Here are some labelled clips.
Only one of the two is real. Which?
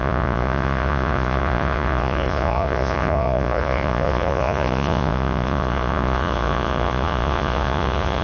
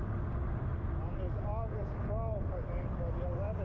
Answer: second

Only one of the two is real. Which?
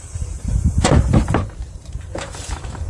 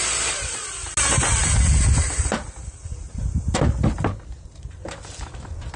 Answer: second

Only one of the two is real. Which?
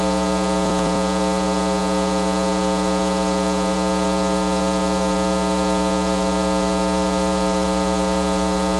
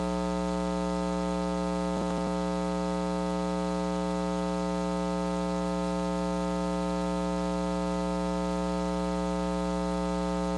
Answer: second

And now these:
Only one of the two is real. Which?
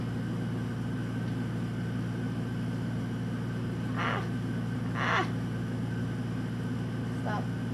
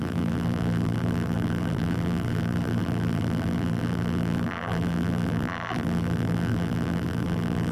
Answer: first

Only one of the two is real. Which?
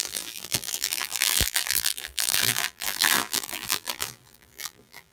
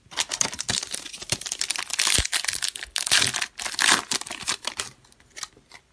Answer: second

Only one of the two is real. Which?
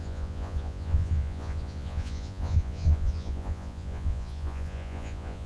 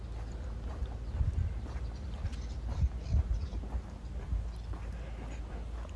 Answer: second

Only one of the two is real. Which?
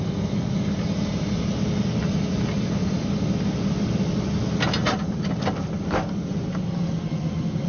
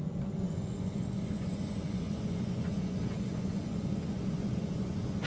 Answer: first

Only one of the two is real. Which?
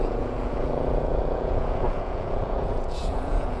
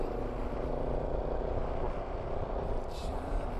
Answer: second